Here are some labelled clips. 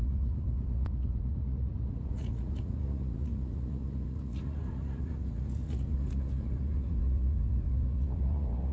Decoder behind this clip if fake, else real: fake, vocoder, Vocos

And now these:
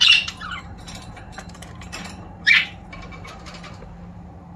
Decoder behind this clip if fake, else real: fake, vocoder, BigVGAN v2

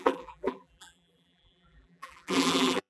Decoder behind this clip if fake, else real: fake, vocoder, BigVGAN v2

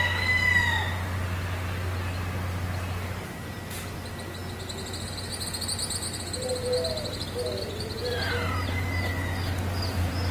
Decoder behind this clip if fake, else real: real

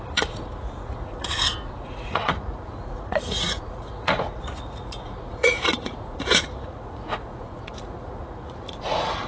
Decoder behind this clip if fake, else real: fake, vocoder, Vocos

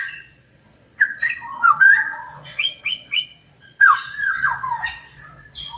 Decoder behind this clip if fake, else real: fake, vocoder, Vocos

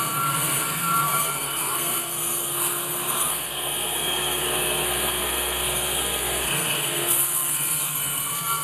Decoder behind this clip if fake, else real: fake, codec, SNAC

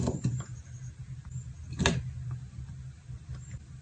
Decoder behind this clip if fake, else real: real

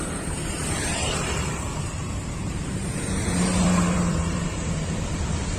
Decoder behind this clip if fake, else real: fake, vocoder, BigVGAN v2